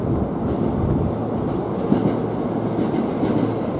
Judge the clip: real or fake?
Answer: real